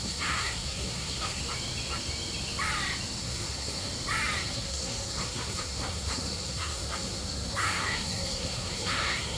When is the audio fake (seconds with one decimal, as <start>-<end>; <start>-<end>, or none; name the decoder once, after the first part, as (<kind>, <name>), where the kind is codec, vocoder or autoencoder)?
0.0-1.4 (codec, SNAC); 3.2-3.9; 4.4-9.4